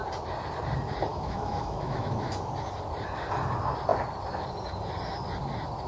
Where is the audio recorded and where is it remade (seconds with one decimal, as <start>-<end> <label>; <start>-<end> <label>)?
0.0-1.1 recorded; 1.1-2.3 remade; 2.3-5.9 recorded